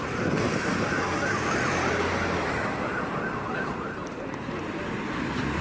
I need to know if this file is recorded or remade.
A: recorded